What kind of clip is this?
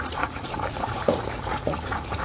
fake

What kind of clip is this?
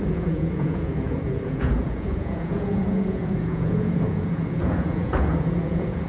fake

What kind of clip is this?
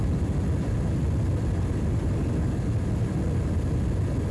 real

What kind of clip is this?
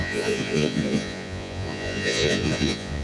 fake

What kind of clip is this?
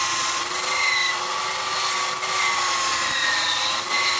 real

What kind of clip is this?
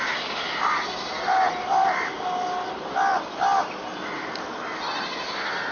real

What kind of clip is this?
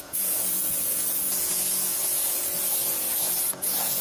fake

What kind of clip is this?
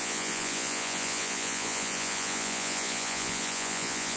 fake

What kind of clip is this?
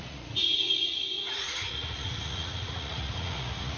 fake